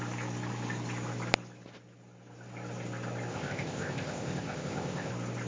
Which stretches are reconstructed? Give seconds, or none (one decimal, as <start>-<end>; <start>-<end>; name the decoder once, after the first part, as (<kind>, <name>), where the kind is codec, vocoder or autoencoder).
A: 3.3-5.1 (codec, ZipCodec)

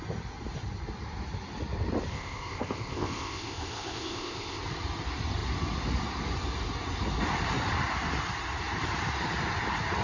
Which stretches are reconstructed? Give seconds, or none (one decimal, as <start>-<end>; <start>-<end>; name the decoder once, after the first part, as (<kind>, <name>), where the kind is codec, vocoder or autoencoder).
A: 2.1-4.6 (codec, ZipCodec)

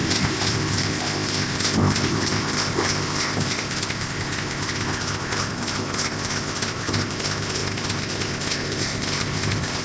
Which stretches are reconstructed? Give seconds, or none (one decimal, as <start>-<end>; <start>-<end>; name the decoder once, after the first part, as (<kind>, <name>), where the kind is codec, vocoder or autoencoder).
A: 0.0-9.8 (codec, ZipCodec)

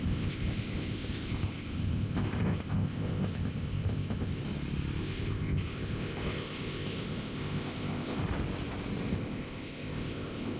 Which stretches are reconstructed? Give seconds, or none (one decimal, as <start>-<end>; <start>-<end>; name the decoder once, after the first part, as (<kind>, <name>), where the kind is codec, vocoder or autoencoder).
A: 0.0-4.4 (codec, ZipCodec); 5.0-8.2; 9.1-10.6

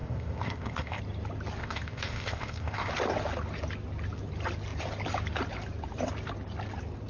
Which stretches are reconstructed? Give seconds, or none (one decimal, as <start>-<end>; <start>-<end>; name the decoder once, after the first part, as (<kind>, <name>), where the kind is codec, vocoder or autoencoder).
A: 0.0-1.0 (codec, ZipCodec); 1.6-2.9

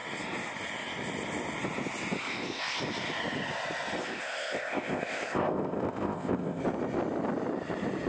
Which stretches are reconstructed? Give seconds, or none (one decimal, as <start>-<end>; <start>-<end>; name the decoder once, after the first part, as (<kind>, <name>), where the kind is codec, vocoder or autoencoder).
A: 2.2-2.8 (codec, ZipCodec); 4.0-6.6